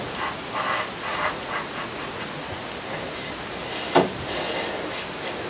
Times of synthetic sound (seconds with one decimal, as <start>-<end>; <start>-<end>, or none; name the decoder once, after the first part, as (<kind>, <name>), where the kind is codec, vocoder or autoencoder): 0.0-0.4 (vocoder, Vocos); 1.0-2.6

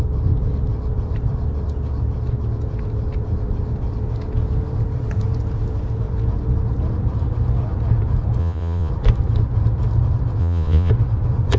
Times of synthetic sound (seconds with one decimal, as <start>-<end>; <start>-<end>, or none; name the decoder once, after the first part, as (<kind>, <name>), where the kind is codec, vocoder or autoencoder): 8.4-8.9 (vocoder, Vocos); 10.4-10.9

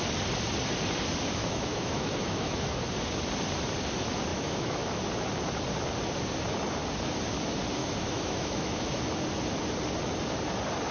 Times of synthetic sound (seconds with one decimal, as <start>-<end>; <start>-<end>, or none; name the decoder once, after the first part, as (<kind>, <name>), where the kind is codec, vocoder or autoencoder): 1.4-2.8 (autoencoder, DAC-VAE); 4.3-5.0; 7.8-9.0

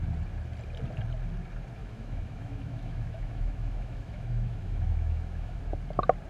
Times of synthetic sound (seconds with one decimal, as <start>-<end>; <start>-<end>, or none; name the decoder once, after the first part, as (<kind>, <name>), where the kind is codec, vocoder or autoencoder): 1.8-5.6 (autoencoder, DAC-VAE)